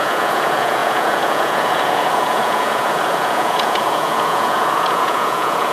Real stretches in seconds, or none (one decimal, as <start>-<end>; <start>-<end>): none